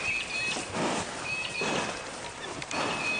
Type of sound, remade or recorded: recorded